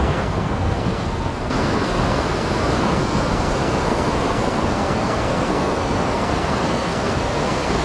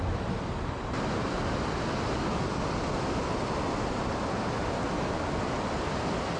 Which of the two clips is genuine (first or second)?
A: second